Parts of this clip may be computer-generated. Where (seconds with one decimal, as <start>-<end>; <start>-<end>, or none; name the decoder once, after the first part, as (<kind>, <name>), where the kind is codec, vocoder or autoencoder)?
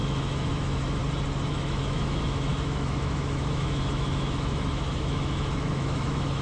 0.0-1.0 (autoencoder, DAC-VAE); 1.5-6.4